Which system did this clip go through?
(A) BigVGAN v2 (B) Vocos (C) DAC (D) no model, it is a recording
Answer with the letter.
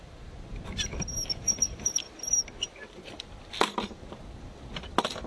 A